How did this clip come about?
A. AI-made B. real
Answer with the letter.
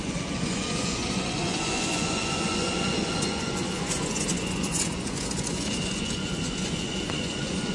A